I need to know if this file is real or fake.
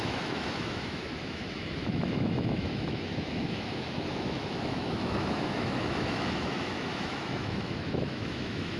fake